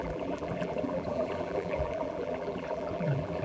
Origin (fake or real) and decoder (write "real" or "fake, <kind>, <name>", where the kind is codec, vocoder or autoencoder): fake, vocoder, BigVGAN v2